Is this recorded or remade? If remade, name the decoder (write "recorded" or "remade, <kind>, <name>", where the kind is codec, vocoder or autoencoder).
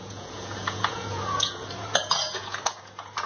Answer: remade, vocoder, Vocos